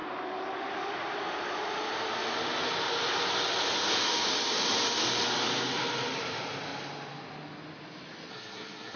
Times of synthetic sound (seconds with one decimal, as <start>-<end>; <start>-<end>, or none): 8.3-9.0